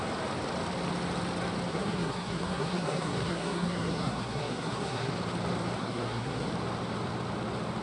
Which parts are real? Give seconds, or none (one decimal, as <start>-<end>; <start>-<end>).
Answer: 0.0-1.7; 5.1-5.8; 6.5-7.8